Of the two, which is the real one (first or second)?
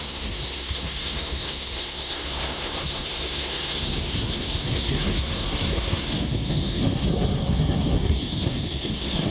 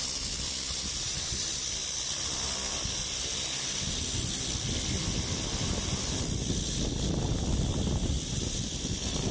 second